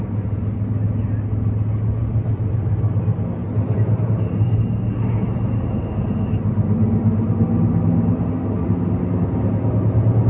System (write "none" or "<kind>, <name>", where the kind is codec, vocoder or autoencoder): none